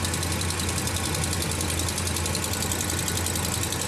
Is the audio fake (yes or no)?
no